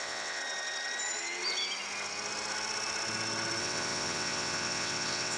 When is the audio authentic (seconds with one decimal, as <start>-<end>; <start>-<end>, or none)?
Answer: 0.4-3.6